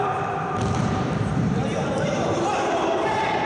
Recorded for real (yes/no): no